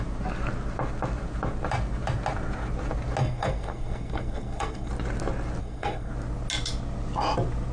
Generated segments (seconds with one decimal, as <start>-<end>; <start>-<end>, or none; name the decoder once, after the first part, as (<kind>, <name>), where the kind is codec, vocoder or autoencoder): 3.2-4.9 (codec, SNAC); 5.6-6.1